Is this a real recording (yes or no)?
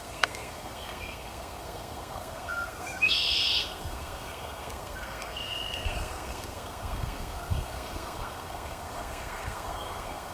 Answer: no